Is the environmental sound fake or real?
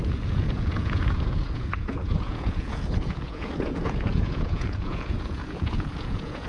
fake